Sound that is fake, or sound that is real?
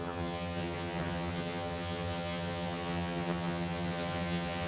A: fake